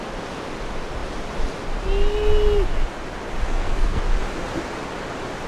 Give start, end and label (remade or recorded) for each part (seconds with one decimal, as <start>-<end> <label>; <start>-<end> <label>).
0.0-3.4 recorded; 3.4-4.0 remade; 4.0-5.5 recorded